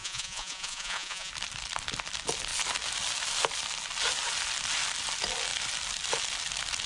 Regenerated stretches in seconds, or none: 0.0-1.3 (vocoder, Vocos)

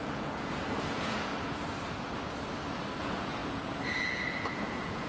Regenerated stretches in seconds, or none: 0.0-1.3 (vocoder, Vocos); 3.0-5.1

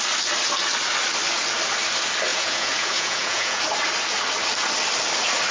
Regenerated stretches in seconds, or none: 2.3-3.6 (vocoder, Vocos)

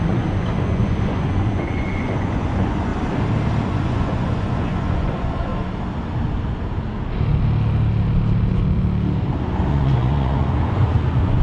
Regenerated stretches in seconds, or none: 0.0-2.9 (vocoder, Vocos); 3.7-5.5; 9.7-11.4

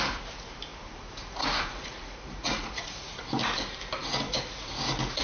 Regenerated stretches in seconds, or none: 0.7-3.2 (vocoder, Vocos)